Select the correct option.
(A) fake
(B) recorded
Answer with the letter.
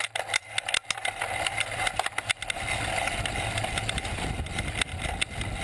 B